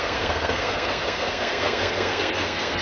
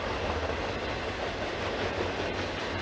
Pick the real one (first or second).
second